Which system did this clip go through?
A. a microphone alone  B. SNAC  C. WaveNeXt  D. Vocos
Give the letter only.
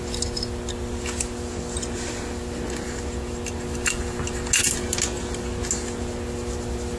A